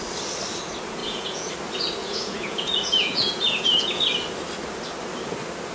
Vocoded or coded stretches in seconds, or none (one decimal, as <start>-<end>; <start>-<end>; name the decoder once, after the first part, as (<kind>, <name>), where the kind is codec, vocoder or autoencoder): 1.0-1.5 (vocoder, Vocos); 2.0-4.0